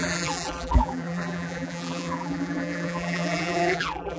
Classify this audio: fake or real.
fake